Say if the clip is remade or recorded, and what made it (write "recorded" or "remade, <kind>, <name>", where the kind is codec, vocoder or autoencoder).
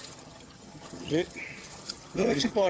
remade, vocoder, HiFi-GAN